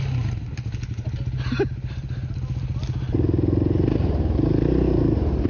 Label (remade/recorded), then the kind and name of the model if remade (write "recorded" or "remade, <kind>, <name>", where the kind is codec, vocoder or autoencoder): recorded